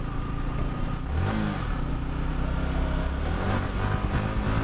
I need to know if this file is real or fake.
real